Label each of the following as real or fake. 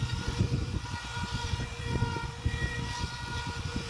fake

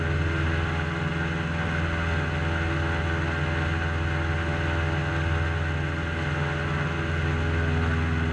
real